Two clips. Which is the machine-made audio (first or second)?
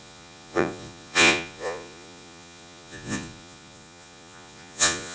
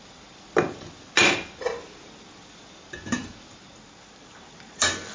first